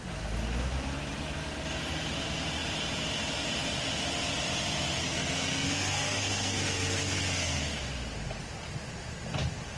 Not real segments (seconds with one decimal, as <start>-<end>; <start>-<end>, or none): 5.0-7.8